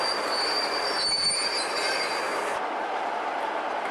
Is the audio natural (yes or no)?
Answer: yes